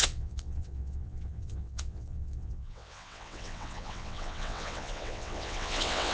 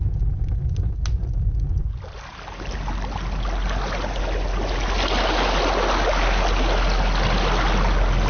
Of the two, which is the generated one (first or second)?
first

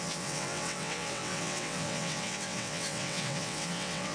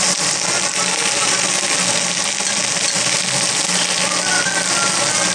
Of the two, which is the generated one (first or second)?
first